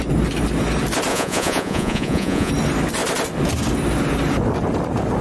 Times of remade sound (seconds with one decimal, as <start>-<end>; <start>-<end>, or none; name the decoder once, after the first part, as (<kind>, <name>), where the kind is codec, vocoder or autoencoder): 1.1-2.5 (vocoder, Vocos)